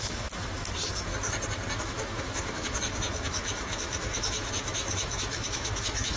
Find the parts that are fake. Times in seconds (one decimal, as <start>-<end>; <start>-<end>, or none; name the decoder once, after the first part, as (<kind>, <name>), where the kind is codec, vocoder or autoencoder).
0.0-1.1 (autoencoder, DAC-VAE); 1.8-6.2